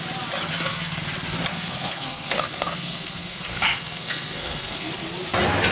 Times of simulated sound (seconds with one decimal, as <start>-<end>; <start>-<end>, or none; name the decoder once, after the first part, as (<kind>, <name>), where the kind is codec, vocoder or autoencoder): 0.5-1.0 (codec, SNAC); 1.5-4.9